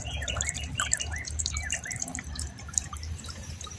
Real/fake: fake